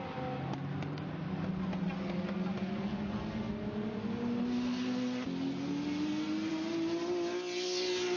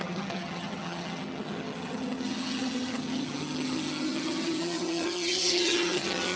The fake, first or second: second